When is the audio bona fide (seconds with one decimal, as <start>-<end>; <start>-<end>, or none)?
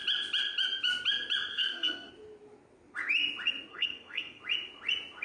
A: 0.0-1.5; 2.1-3.7; 4.4-5.2